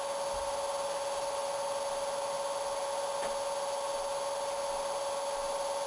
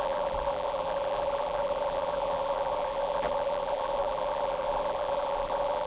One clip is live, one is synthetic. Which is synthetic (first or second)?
second